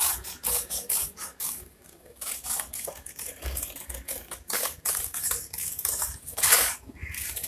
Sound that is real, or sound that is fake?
fake